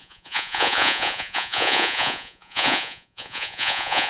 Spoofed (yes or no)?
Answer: yes